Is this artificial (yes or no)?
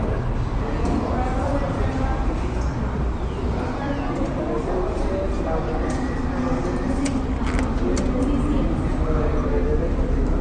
no